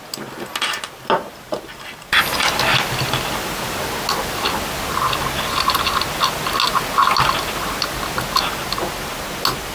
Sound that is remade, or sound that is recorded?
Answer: recorded